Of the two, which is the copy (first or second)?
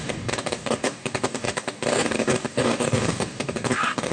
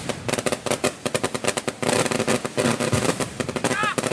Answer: first